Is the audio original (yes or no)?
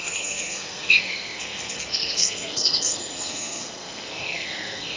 no